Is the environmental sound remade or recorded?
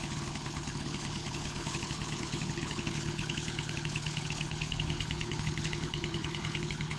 remade